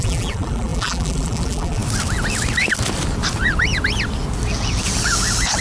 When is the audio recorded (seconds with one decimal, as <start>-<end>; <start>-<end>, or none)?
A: 1.8-5.6